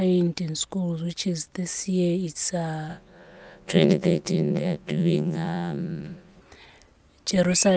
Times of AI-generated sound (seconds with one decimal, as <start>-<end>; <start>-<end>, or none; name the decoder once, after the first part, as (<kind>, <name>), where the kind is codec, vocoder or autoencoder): 2.9-6.4 (vocoder, Vocos)